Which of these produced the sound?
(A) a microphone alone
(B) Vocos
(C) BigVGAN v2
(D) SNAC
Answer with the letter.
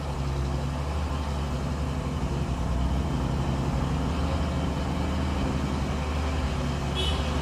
A